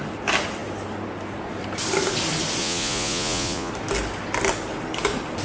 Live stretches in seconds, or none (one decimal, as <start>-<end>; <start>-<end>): 0.0-2.6; 3.7-5.4